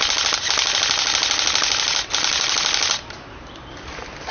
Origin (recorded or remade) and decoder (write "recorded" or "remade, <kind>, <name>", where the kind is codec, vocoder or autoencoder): recorded